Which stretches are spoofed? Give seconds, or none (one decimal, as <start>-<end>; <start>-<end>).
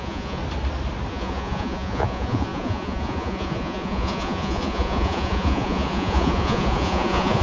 0.0-0.4; 1.1-7.4